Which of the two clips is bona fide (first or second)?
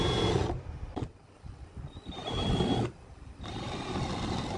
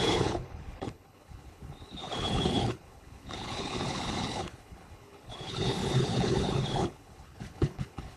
first